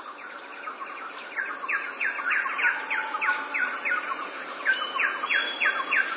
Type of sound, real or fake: real